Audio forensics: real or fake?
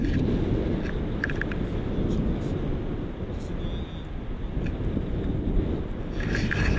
real